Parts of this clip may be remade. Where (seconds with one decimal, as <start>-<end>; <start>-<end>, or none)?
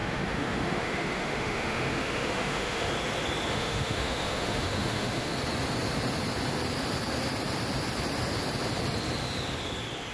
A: 0.0-2.9; 3.5-5.3